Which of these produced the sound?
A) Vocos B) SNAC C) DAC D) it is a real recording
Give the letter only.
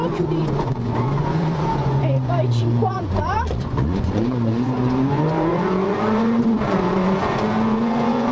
A